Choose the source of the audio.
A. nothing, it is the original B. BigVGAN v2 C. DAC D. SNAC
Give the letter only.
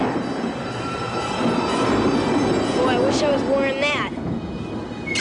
A